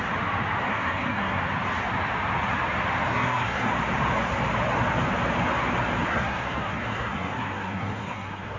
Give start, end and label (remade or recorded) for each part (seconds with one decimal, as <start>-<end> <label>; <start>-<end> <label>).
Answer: 0.0-0.7 recorded; 0.7-1.4 remade; 1.4-3.1 recorded; 3.1-3.7 remade; 3.7-6.1 recorded; 6.1-8.6 remade